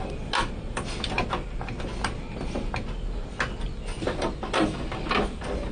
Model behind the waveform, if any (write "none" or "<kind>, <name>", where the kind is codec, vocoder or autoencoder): none